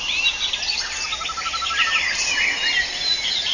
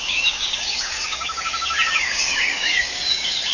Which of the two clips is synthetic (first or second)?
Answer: second